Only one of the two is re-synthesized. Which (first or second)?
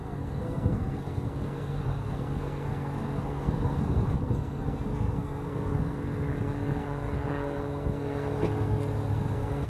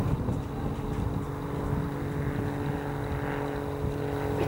first